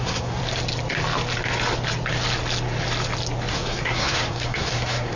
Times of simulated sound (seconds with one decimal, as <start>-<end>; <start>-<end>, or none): 0.0-0.4; 3.5-5.2